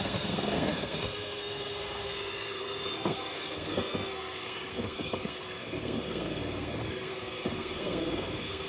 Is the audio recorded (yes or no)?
no